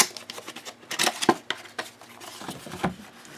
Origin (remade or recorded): recorded